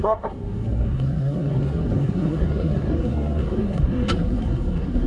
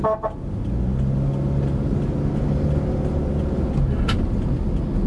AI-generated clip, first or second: first